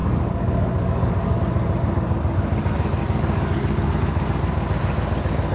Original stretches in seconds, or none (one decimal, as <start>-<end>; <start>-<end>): 1.4-3.0; 3.9-5.5